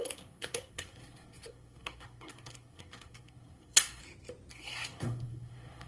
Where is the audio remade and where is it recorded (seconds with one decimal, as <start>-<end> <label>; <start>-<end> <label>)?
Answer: 0.0-4.0 remade; 4.0-4.5 recorded; 4.5-5.9 remade